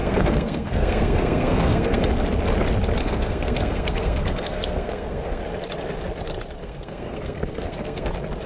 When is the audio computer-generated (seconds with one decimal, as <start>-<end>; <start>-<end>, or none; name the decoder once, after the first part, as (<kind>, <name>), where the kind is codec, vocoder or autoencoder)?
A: 0.0-2.1 (codec, SNAC); 3.0-5.4; 6.6-8.1